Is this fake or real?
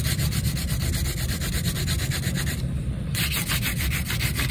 real